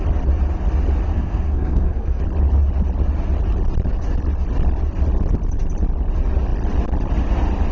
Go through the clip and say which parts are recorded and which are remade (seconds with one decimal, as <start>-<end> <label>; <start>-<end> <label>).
0.0-1.1 recorded; 1.1-2.2 remade; 2.2-7.7 recorded